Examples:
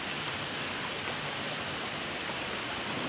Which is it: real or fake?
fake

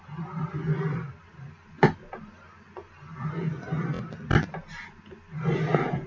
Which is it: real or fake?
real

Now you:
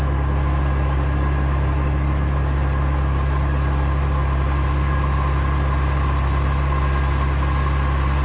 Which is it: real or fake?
real